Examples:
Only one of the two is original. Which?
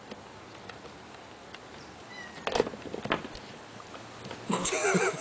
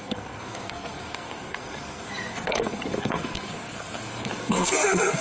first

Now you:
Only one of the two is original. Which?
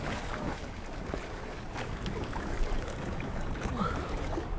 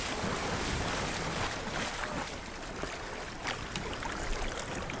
second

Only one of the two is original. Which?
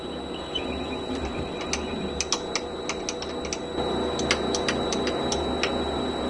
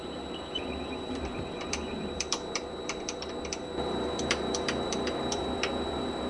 first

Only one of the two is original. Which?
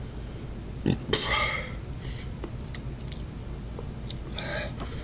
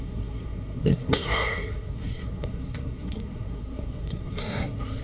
first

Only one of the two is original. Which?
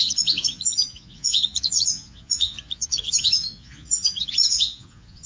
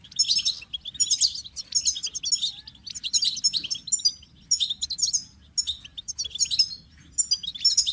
second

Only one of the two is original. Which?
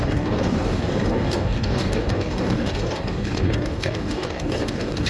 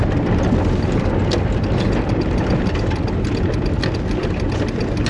second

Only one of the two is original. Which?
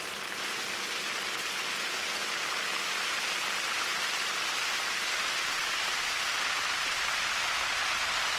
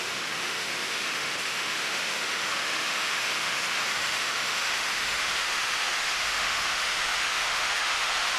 first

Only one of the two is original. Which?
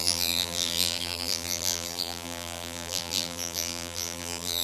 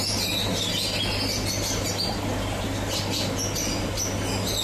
second